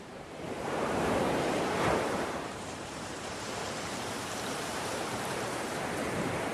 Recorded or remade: remade